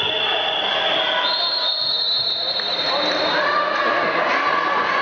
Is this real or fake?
real